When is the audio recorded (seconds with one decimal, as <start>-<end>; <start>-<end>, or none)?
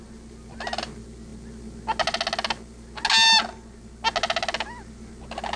0.0-5.6